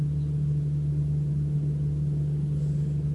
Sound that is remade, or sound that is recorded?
recorded